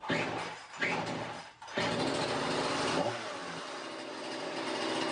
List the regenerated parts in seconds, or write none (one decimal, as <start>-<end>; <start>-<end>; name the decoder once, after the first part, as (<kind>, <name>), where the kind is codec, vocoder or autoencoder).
none